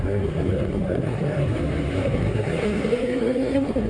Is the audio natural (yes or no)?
no